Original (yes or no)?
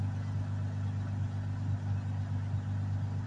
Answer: yes